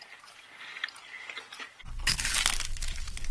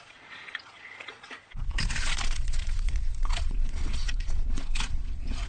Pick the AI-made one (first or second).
second